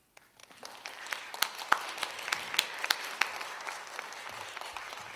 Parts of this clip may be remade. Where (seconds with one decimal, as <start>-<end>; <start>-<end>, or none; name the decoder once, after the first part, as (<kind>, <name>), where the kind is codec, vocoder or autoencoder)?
0.0-5.2 (vocoder, BigVGAN v2)

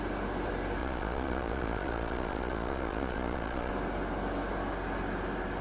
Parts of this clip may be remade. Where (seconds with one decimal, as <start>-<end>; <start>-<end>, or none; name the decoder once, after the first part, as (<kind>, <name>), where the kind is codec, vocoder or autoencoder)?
0.8-3.7 (vocoder, Vocos)